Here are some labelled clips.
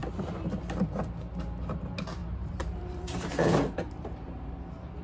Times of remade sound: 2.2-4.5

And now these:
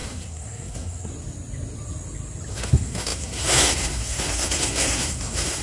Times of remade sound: 0.0-1.1; 2.5-5.6

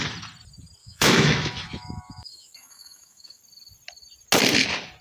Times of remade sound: 0.8-3.4